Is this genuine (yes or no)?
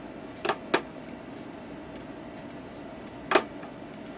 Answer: yes